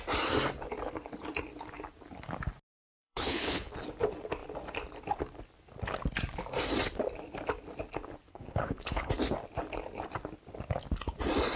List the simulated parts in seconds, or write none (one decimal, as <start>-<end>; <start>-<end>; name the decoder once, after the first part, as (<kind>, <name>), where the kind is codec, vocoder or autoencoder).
3.0-3.7 (codec, HILCodec); 8.3-9.1